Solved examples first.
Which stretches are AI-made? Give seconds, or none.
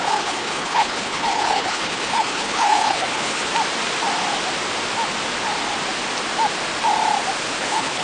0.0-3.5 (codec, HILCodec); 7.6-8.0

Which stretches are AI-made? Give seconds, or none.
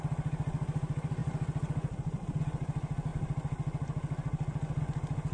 none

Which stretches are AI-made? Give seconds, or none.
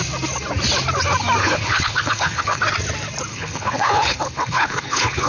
1.4-2.6 (codec, HILCodec); 3.3-5.3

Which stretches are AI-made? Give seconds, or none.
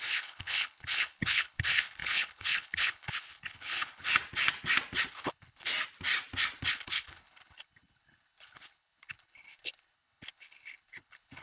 0.0-4.1 (codec, HILCodec); 5.1-5.7; 6.7-11.4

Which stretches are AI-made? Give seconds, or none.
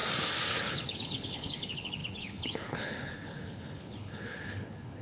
0.6-5.0 (codec, HILCodec)